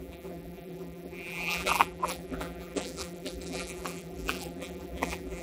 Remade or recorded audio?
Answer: remade